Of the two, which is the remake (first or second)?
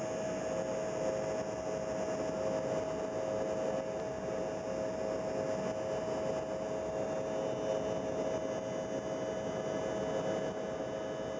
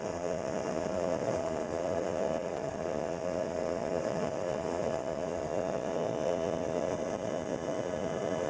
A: second